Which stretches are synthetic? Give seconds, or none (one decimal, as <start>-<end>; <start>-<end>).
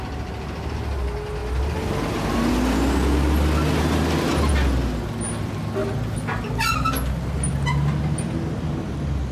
none